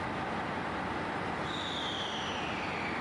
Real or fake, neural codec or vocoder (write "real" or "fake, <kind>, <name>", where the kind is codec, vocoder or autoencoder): real